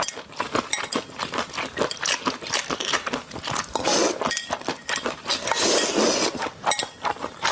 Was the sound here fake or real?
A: real